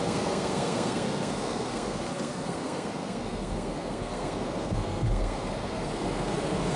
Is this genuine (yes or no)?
no